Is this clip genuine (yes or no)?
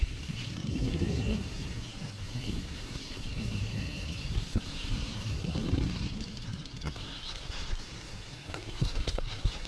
no